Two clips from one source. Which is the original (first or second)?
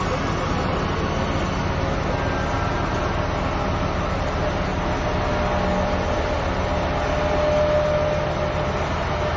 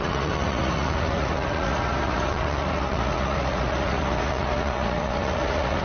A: first